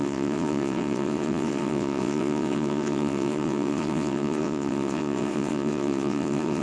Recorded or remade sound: remade